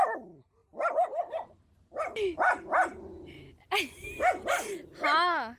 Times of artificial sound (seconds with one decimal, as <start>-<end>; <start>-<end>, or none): none